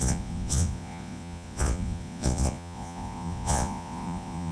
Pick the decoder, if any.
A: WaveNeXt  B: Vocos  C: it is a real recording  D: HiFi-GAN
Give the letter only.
B